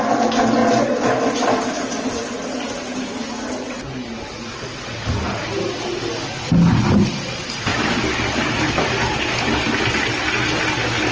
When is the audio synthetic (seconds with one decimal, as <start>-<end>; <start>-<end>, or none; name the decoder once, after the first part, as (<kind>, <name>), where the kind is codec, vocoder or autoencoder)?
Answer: none